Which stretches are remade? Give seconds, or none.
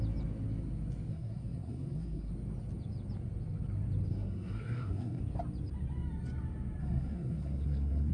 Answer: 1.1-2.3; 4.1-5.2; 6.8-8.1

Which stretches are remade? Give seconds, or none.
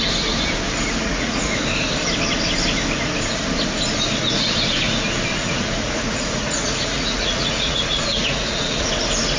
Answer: 1.0-1.5; 5.3-8.9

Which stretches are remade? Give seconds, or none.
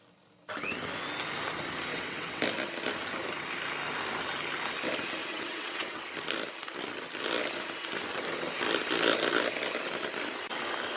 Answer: 1.9-2.4; 5.2-6.0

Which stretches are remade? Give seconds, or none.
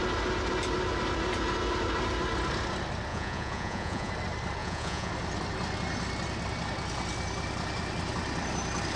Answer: 3.1-4.1; 4.6-5.1